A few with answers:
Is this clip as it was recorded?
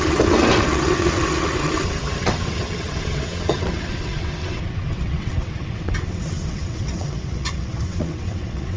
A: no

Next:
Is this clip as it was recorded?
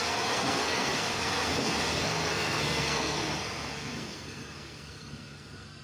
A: no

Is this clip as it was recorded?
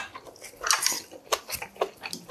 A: yes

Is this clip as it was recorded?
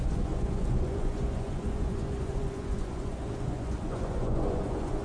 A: no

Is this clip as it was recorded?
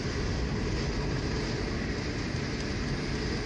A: yes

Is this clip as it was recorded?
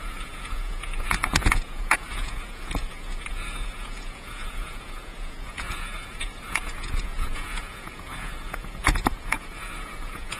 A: no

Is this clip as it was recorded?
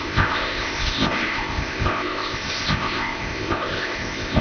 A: no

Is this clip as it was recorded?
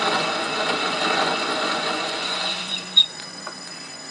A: no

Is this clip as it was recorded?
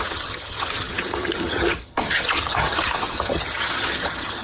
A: no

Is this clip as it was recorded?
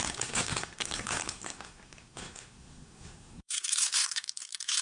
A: no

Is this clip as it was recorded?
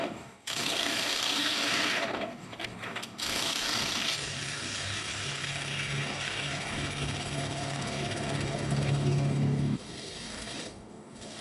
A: no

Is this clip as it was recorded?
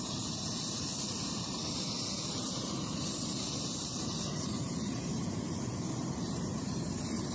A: no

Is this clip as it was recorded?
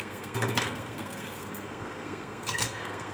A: no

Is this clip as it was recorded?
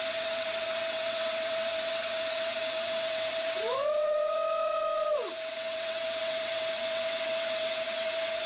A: no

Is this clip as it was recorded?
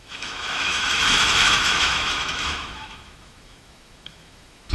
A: no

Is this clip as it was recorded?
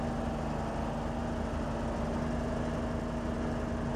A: yes